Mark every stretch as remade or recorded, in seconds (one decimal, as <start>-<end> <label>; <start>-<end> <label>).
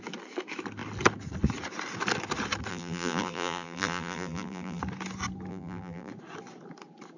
0.0-2.7 recorded; 2.7-4.8 remade; 4.8-5.5 recorded; 5.5-6.1 remade; 6.1-7.2 recorded